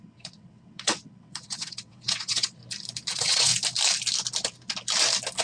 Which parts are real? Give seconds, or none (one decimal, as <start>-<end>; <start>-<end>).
2.6-3.1; 3.5-5.4